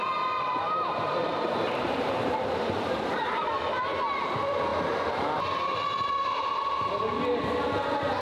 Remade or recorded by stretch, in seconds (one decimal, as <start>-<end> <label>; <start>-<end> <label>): 0.0-1.2 recorded; 1.2-3.1 remade; 3.1-8.2 recorded